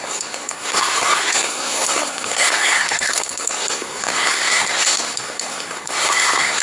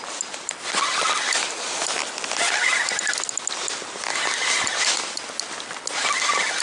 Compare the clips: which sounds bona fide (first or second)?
second